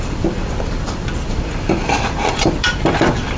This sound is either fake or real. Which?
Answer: fake